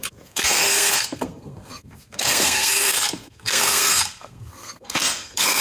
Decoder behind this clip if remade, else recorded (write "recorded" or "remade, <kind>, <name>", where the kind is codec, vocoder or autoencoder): remade, codec, SNAC